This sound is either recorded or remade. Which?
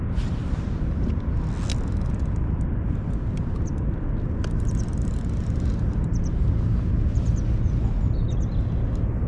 recorded